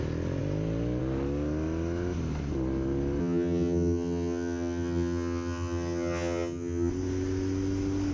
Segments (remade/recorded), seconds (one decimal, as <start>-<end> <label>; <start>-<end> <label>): 0.0-3.2 recorded; 3.2-6.9 remade; 6.9-8.1 recorded